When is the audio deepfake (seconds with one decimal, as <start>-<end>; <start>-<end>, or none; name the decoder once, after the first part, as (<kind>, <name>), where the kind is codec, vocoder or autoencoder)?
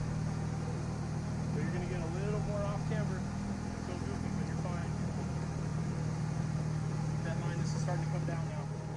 4.8-5.3 (vocoder, BigVGAN v2)